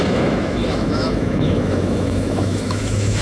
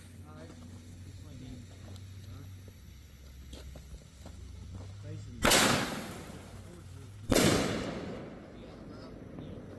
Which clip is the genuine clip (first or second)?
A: second